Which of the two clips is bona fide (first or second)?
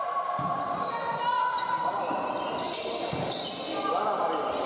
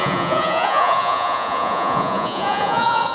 first